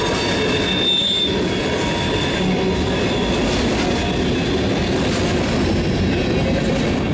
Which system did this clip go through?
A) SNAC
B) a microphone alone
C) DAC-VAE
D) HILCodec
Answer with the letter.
B